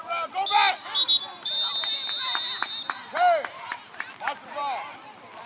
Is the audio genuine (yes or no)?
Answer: yes